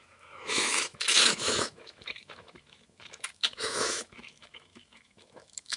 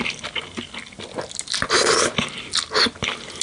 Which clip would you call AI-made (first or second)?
first